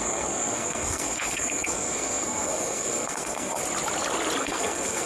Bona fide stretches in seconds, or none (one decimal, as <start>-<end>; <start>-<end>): 3.6-4.4